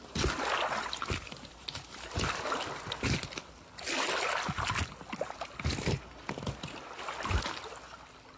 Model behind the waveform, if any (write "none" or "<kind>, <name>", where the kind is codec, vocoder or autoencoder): none